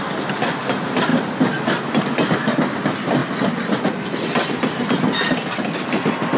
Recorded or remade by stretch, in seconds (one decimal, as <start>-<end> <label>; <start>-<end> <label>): 0.0-6.4 recorded